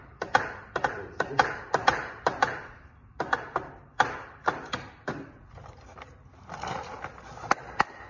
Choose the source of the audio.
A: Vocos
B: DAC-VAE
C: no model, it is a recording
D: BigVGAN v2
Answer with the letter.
C